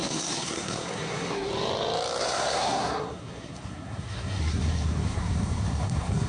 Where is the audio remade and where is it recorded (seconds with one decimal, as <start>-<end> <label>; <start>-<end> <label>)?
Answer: 0.0-1.5 remade; 1.5-2.2 recorded; 2.2-6.3 remade